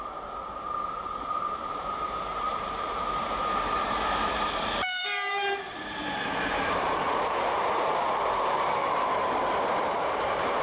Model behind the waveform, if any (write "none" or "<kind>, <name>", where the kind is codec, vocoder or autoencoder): vocoder, BigVGAN v2